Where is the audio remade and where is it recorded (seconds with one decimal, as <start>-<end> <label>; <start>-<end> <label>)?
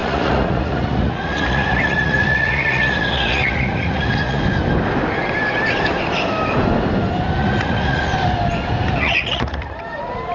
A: 0.0-4.4 remade; 4.4-7.4 recorded; 7.4-8.1 remade; 8.1-9.0 recorded; 9.0-9.6 remade; 9.6-10.3 recorded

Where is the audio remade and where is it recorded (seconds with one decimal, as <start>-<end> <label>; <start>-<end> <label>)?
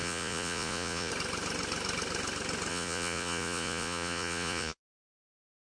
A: 0.0-1.1 remade; 1.1-2.7 recorded; 2.7-4.8 remade; 4.8-5.6 recorded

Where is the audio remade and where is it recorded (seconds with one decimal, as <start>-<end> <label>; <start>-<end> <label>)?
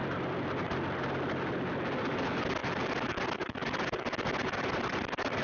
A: 0.0-5.4 recorded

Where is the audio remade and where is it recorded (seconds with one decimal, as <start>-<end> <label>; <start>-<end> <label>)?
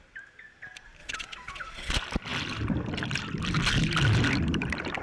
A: 0.0-1.0 recorded; 1.0-1.9 remade; 1.9-5.0 recorded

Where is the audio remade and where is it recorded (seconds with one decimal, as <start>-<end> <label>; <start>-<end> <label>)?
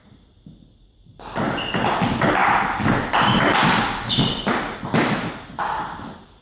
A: 0.0-6.4 recorded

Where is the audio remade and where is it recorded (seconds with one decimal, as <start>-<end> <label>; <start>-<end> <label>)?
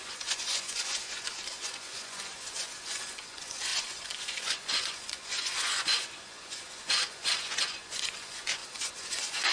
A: 0.0-9.5 remade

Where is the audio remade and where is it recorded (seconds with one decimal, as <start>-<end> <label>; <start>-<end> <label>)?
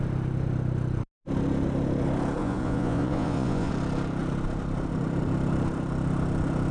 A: 0.0-2.4 recorded; 2.4-3.7 remade; 3.7-6.7 recorded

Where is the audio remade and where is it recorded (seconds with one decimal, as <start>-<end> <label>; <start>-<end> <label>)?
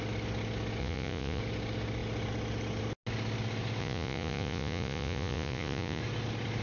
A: 0.0-0.8 recorded; 0.8-1.4 remade; 1.4-3.8 recorded; 3.8-6.0 remade; 6.0-6.6 recorded